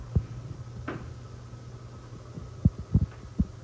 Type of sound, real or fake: real